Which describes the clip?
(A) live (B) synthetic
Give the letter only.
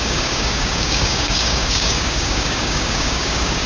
B